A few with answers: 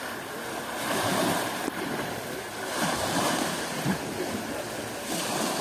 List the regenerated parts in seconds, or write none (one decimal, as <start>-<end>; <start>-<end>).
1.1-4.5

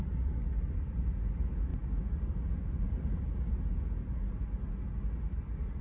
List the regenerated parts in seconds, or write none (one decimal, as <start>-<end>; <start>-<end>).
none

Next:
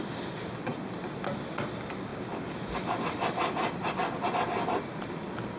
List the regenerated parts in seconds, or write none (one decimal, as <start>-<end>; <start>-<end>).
none

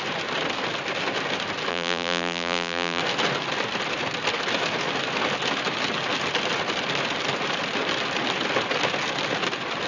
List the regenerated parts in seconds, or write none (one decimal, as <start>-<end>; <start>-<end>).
1.7-3.0

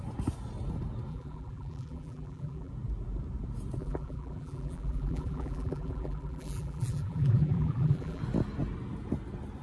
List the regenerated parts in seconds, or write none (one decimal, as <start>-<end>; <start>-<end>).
1.1-2.7; 3.8-8.2

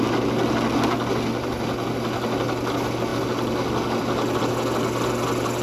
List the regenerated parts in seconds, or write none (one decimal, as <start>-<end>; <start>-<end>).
none